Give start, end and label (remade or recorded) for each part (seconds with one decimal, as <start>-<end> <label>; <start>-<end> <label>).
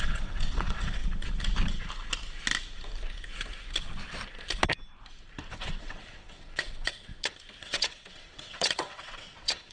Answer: 0.0-1.0 remade; 1.0-5.5 recorded; 5.5-7.1 remade; 7.1-7.6 recorded; 7.6-9.7 remade